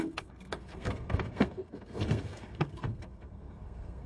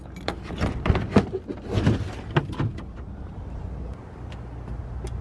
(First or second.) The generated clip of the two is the first